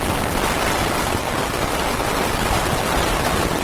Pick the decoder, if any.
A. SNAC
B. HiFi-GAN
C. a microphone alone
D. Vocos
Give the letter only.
C